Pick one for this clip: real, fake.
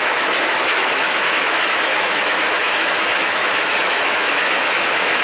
fake